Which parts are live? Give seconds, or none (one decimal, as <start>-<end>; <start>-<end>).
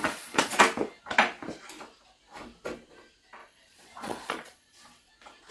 0.6-3.4; 5.1-5.5